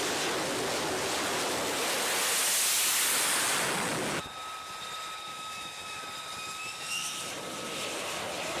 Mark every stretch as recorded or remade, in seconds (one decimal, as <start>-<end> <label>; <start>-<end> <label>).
0.0-5.3 recorded; 5.3-6.0 remade; 6.0-8.6 recorded